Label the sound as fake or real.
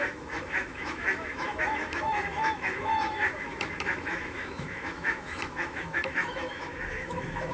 fake